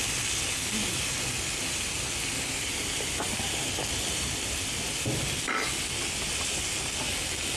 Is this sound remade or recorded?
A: recorded